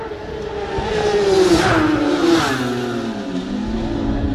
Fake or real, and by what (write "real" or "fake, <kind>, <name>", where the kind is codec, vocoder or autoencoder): real